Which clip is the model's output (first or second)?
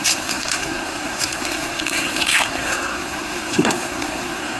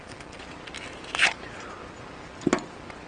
first